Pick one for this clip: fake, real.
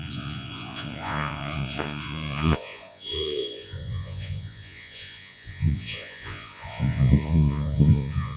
fake